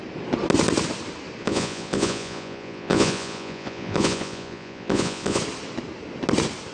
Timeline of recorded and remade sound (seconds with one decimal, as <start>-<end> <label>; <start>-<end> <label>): 0.0-1.4 recorded; 1.4-5.4 remade; 5.4-6.7 recorded